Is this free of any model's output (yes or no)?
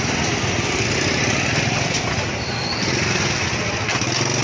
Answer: yes